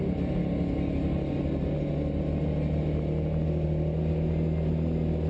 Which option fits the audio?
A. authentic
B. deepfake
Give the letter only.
A